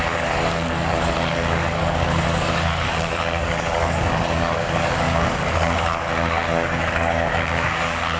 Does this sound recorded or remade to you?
remade